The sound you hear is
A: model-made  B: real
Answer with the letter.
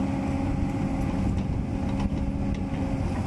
B